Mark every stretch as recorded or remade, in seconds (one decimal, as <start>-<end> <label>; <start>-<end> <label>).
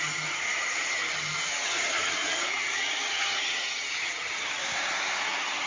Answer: 0.0-4.6 remade; 4.6-5.2 recorded; 5.2-5.7 remade